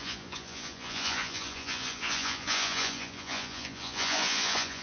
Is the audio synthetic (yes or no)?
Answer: yes